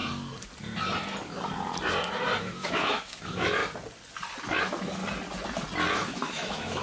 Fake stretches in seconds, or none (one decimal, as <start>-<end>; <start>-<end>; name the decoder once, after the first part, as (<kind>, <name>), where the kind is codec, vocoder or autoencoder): 2.4-3.6 (autoencoder, DAC-VAE); 4.6-5.0; 5.9-6.8